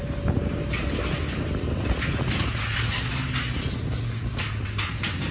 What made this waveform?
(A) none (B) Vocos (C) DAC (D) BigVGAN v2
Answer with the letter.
A